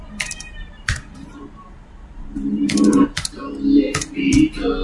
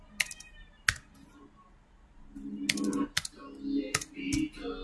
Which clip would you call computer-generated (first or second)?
first